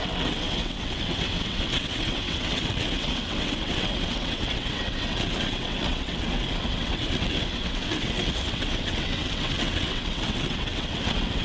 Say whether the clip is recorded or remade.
remade